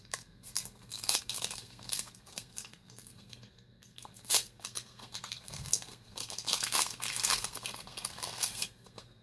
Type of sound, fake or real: fake